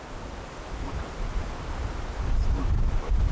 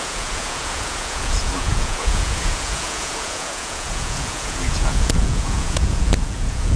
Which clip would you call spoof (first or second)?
second